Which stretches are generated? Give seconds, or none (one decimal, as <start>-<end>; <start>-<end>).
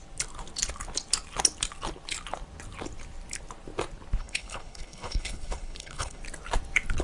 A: 4.2-6.2